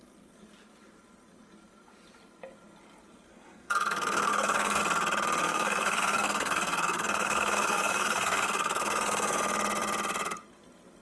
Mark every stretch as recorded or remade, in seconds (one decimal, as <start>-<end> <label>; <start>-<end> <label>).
0.0-3.3 recorded; 3.3-4.8 remade; 4.8-5.4 recorded; 5.4-9.4 remade; 9.4-11.0 recorded

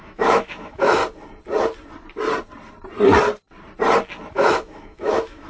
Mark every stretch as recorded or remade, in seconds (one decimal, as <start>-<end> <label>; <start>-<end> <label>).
0.0-1.0 remade; 1.0-4.3 recorded; 4.3-5.5 remade

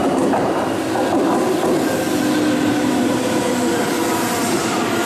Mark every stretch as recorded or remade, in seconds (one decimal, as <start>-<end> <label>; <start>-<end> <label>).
0.0-0.6 remade; 0.6-2.7 recorded; 2.7-3.3 remade; 3.3-4.1 recorded; 4.1-4.6 remade; 4.6-5.1 recorded

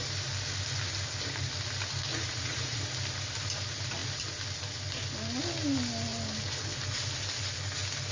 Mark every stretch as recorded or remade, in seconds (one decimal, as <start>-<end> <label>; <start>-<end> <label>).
0.0-2.1 recorded; 2.1-2.8 remade; 2.8-8.1 recorded